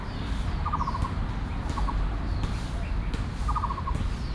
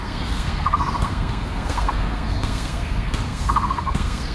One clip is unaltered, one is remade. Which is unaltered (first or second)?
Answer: first